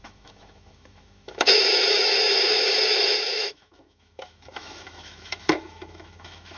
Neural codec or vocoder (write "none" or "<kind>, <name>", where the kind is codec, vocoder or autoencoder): autoencoder, DAC-VAE